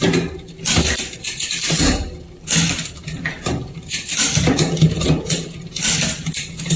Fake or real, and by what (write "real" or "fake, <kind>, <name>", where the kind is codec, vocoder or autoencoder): real